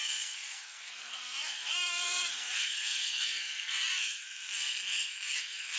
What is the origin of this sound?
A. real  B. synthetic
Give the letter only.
B